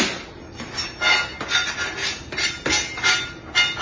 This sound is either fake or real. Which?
real